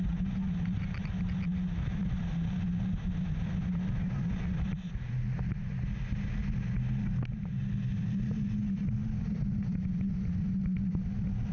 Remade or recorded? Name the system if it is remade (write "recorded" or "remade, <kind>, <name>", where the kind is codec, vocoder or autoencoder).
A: recorded